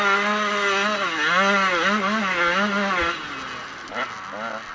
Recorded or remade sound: recorded